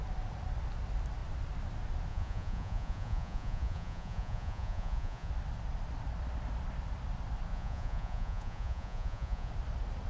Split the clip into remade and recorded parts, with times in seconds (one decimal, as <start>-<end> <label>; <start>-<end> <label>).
0.0-2.1 recorded; 2.1-5.3 remade; 5.3-7.5 recorded; 7.5-9.5 remade; 9.5-10.1 recorded